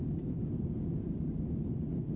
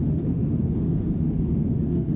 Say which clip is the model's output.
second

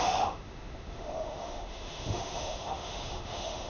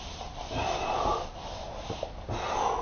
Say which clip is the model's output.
first